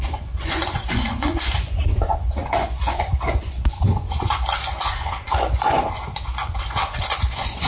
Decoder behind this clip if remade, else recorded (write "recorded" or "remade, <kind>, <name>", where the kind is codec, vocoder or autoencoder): remade, vocoder, Vocos